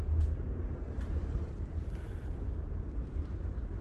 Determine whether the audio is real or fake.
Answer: fake